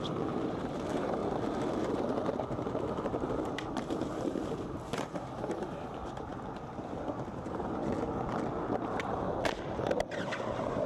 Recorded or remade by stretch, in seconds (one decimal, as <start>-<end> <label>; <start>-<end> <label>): 0.0-1.2 remade; 1.2-3.0 recorded; 3.0-7.8 remade; 7.8-10.9 recorded